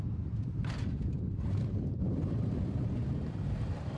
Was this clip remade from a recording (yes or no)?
yes